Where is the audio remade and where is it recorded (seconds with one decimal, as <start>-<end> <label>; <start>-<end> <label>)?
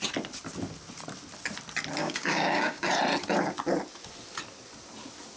0.0-2.0 recorded; 2.0-2.9 remade; 2.9-5.4 recorded